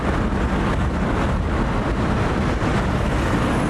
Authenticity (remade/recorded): recorded